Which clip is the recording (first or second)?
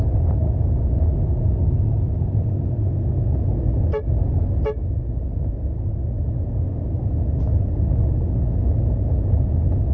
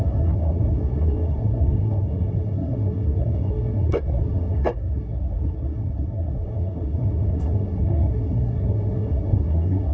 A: first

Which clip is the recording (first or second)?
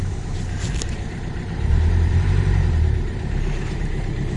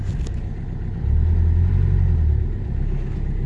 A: second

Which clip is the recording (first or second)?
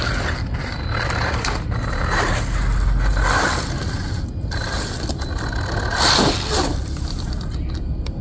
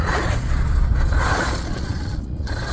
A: first